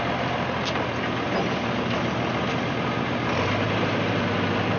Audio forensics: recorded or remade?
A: recorded